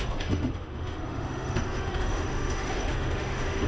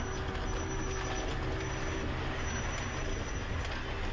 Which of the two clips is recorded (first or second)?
second